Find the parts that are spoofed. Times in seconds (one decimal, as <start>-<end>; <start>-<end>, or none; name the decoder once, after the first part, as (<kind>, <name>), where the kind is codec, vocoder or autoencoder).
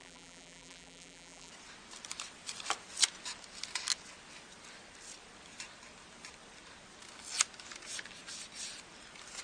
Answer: 0.0-1.5 (vocoder, BigVGAN v2)